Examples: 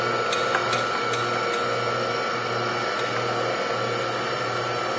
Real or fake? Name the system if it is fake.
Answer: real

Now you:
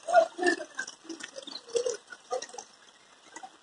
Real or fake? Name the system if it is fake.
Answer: real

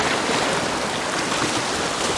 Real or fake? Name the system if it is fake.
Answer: real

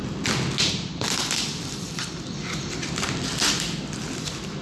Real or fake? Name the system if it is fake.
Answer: real